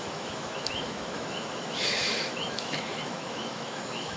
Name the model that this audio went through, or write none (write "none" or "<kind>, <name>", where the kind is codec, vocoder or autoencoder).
autoencoder, DAC-VAE